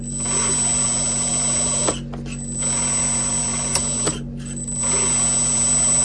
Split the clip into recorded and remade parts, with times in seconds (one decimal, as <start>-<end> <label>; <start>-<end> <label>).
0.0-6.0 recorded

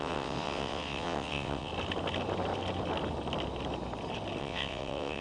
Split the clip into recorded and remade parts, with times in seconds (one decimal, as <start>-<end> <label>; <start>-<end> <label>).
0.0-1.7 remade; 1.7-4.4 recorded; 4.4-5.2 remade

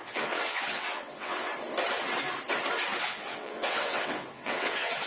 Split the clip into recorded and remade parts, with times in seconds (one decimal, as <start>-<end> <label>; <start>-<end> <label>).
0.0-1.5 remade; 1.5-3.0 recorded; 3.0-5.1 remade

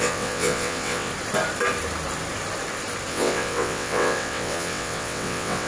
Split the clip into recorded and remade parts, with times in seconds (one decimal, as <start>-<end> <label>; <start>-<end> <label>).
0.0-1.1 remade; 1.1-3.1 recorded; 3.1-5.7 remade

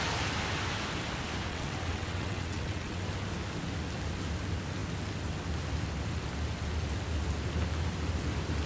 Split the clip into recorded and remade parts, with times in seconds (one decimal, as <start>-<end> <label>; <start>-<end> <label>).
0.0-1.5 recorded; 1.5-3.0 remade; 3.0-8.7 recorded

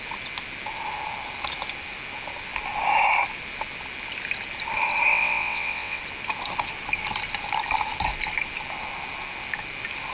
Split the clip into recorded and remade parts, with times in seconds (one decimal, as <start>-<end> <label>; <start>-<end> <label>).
0.0-5.1 recorded; 5.1-6.0 remade; 6.0-10.1 recorded